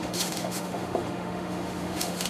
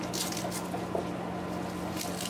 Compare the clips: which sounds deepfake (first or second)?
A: first